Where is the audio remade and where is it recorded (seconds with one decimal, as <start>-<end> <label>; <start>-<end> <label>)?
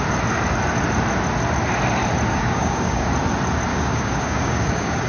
0.0-2.3 recorded; 2.3-3.1 remade; 3.1-3.7 recorded; 3.7-5.1 remade